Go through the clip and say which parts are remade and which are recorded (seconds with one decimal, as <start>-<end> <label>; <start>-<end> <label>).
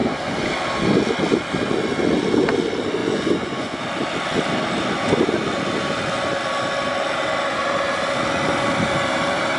0.0-0.5 remade; 0.5-3.0 recorded; 3.0-3.8 remade; 3.8-9.6 recorded